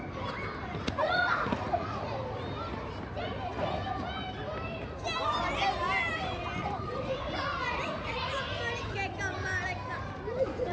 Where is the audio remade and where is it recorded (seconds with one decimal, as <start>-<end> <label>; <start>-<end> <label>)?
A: 0.0-0.6 recorded; 0.6-2.1 remade; 2.1-6.6 recorded; 6.6-8.4 remade; 8.4-10.7 recorded